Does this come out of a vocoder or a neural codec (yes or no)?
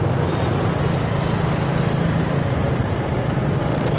no